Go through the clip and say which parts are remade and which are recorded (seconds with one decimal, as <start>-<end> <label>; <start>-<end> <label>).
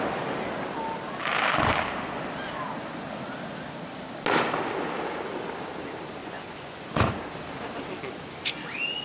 0.0-6.2 recorded; 6.2-6.8 remade; 6.8-9.0 recorded